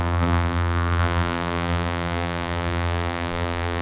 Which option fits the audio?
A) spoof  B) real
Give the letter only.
A